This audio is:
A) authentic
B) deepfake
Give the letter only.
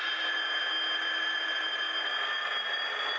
A